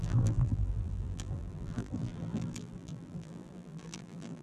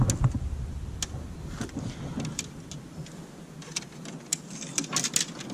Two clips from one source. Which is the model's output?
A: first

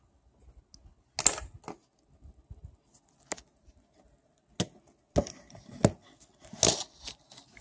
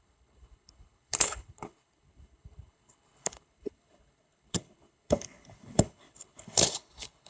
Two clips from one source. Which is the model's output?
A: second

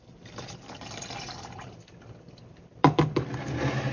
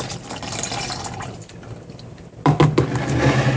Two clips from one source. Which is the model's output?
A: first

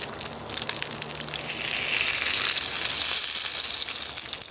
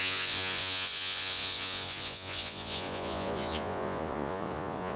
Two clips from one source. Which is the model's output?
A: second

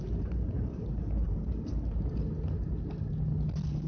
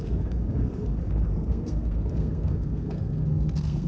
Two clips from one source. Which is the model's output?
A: second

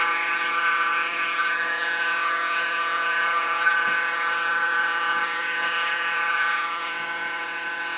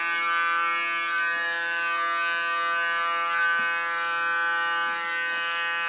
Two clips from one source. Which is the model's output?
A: first